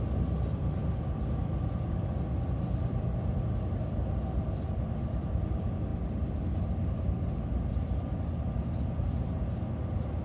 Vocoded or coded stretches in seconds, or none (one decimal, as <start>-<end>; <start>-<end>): none